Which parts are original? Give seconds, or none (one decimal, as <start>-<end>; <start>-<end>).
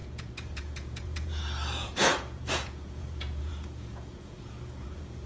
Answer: 1.4-1.8